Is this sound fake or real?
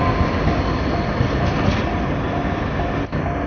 real